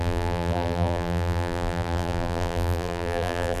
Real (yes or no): no